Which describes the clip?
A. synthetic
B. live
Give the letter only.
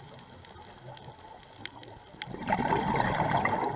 B